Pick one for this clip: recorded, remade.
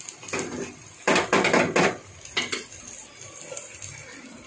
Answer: recorded